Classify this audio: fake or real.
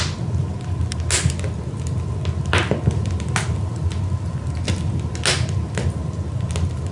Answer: real